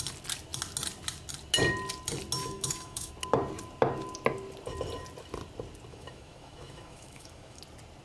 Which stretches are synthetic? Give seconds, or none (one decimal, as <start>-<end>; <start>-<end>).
2.4-3.1; 5.9-7.6